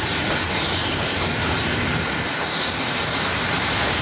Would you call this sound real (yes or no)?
yes